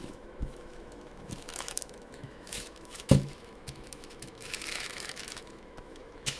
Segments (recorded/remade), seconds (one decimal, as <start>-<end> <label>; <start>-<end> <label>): 0.0-6.4 remade